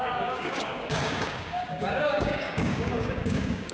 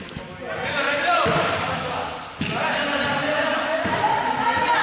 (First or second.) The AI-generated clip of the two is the first